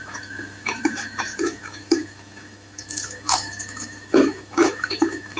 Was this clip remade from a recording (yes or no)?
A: yes